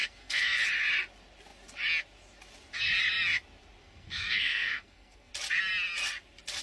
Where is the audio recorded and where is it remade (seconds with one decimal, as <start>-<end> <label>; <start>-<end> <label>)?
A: 0.0-0.6 remade; 0.6-3.8 recorded; 3.8-5.3 remade; 5.3-6.6 recorded